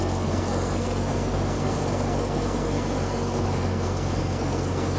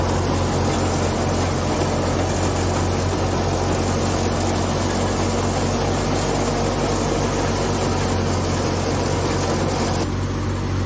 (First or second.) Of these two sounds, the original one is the second